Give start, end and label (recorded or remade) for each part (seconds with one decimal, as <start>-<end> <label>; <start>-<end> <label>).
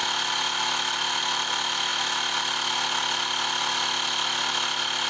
0.0-5.1 recorded